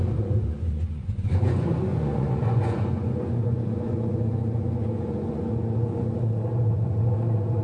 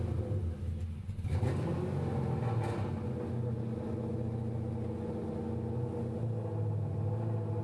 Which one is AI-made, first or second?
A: first